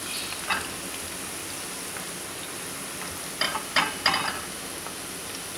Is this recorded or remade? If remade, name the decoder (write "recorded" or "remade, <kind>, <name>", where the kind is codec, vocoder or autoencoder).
recorded